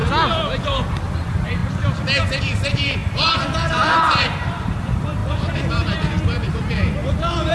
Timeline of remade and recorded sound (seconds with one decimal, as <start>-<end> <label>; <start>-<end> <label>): 0.0-0.6 recorded; 0.6-1.6 remade; 1.6-2.4 recorded; 2.4-7.5 remade